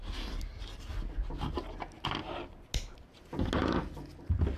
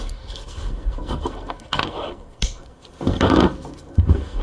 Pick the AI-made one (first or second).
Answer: second